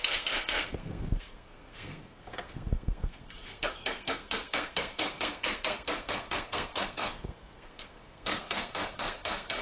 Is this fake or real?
fake